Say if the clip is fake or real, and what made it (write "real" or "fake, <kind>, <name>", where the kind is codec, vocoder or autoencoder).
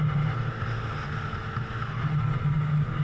real